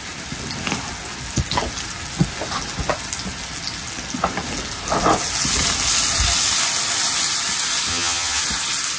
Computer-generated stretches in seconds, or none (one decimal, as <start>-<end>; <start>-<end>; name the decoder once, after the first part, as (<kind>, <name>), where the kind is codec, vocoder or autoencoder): 7.9-8.4 (vocoder, HiFi-GAN)

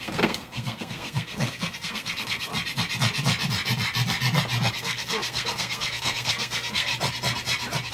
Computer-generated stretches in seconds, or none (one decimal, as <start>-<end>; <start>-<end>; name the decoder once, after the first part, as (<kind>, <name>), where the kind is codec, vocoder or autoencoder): 0.0-2.5 (codec, SNAC); 4.7-6.9

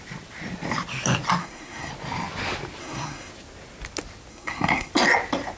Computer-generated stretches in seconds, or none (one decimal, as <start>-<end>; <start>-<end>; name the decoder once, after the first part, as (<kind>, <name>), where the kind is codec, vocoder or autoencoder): 1.4-1.9 (codec, SNAC); 2.8-3.3; 4.3-4.9

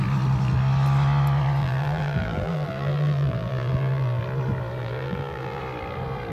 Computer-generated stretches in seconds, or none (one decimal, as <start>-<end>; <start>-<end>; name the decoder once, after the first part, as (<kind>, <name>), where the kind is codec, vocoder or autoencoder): 1.6-4.2 (vocoder, BigVGAN v2); 4.8-5.6

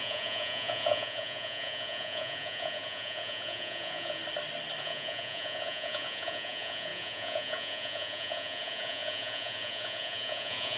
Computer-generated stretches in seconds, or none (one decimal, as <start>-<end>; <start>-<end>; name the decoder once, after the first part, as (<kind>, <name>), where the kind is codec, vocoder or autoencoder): 0.0-4.2 (vocoder, Vocos); 4.8-10.8

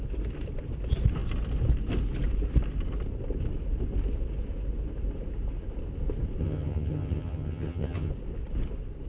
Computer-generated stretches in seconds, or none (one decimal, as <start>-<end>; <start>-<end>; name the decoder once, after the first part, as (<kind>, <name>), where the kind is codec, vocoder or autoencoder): 6.4-8.1 (vocoder, HiFi-GAN)